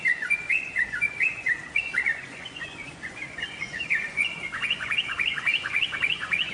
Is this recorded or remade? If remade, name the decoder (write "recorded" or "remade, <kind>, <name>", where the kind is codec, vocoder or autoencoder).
remade, vocoder, Vocos